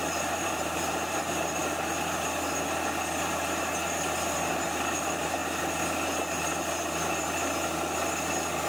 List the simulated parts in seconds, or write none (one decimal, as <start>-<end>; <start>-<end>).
0.0-1.6; 4.5-5.4